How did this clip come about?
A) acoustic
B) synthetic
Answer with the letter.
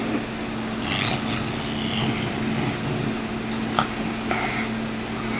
A